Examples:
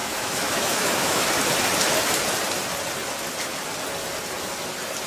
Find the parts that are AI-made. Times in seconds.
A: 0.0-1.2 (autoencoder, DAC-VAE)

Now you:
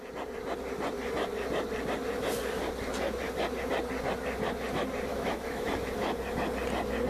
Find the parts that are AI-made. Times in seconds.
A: 5.1-5.7 (autoencoder, DAC-VAE)